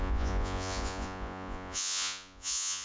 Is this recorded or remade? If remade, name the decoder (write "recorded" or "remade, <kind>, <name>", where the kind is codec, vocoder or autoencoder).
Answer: remade, vocoder, Vocos